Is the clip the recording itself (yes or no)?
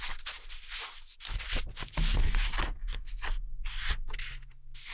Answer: yes